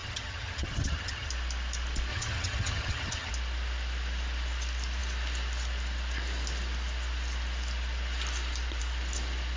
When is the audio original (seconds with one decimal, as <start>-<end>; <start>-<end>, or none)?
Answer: 1.3-2.1; 3.3-9.6